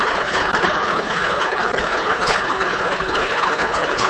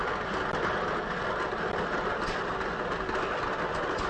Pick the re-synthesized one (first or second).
first